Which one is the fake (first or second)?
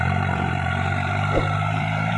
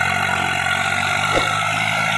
first